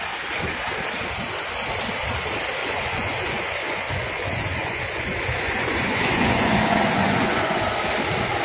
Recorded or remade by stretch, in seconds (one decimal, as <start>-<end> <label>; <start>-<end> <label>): 0.0-2.6 recorded; 2.6-7.6 remade; 7.6-8.4 recorded